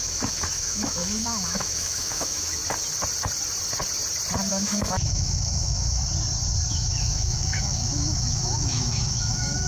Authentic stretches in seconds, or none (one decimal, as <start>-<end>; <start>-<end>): 2.6-4.5; 6.0-6.7